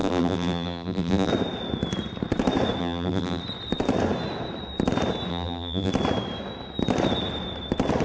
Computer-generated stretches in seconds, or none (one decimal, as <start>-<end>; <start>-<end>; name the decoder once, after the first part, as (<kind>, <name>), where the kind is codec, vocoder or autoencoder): 0.0-1.3 (vocoder, BigVGAN v2); 2.8-3.4; 5.3-5.9